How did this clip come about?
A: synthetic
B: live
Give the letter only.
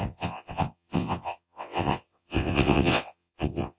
A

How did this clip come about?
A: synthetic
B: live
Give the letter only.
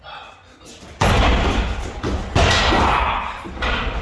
B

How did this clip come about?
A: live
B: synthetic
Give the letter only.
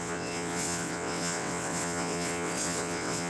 B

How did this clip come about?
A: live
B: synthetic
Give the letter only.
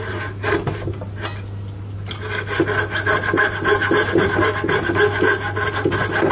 A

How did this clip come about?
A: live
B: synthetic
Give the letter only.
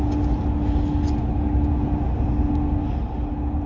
A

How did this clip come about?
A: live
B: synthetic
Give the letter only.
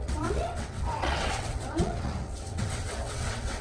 B